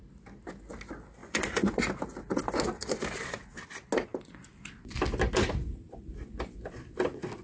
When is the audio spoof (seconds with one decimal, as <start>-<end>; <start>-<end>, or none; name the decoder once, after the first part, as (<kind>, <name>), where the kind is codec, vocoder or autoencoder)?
1.2-1.8 (vocoder, Vocos)